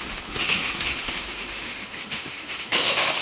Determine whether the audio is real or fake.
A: fake